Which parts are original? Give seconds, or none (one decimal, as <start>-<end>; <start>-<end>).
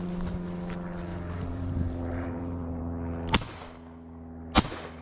0.0-1.1; 2.8-5.0